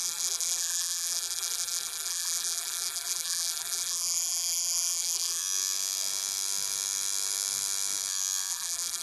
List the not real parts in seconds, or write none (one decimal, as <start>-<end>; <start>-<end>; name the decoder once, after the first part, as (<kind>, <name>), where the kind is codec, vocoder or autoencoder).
0.0-5.4 (vocoder, BigVGAN v2); 8.5-9.0